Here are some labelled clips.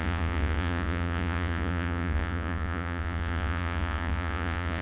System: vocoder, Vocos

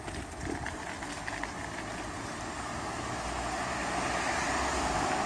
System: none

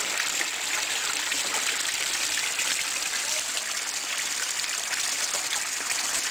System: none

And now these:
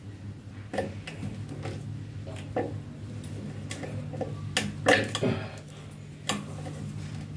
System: none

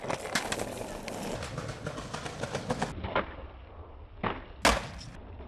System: none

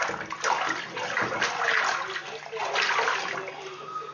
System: none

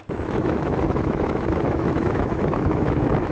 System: autoencoder, DAC-VAE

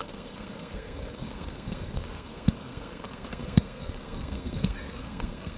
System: codec, SNAC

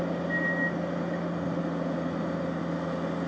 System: none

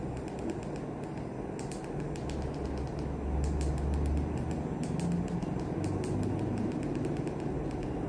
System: none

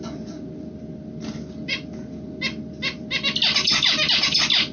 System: none